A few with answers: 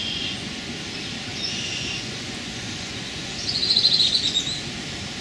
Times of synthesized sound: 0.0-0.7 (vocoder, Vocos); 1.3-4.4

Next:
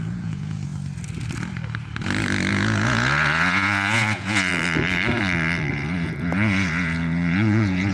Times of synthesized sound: 0.0-0.7 (vocoder, Vocos); 2.5-4.5; 5.7-7.9

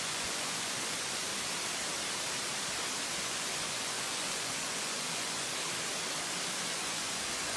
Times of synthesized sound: 0.0-1.3 (vocoder, Vocos); 3.2-5.6; 6.6-7.6

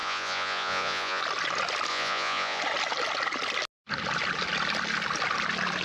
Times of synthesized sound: 0.0-1.2 (vocoder, Vocos); 1.9-2.6

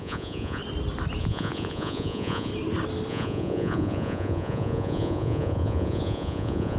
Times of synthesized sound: 0.0-0.6 (vocoder, Vocos); 1.2-2.5; 3.1-6.8